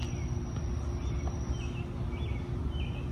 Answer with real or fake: real